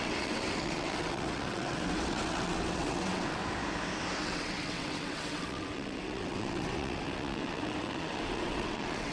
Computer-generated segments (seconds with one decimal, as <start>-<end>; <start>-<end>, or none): 0.0-3.4; 4.2-9.1